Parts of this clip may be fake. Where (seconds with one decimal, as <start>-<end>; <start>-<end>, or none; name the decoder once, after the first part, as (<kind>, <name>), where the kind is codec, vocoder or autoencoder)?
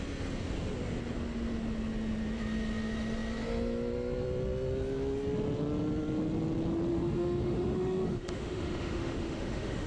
6.9-9.9 (autoencoder, DAC-VAE)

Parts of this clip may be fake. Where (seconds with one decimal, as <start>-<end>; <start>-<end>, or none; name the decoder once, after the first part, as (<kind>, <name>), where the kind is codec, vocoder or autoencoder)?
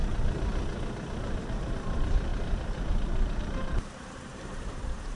1.4-2.3 (vocoder, BigVGAN v2); 3.4-5.1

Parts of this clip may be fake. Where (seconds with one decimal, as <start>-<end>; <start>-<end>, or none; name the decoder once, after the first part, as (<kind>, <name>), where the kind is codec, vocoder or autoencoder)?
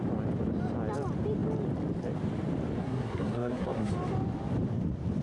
2.8-3.9 (codec, SNAC)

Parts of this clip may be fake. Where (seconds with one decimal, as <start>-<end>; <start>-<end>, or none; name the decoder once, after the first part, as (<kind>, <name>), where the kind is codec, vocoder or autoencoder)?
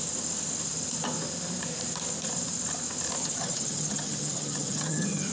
3.2-5.3 (vocoder, HiFi-GAN)